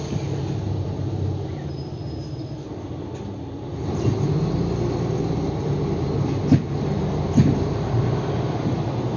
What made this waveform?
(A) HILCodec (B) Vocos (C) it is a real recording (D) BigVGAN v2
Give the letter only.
C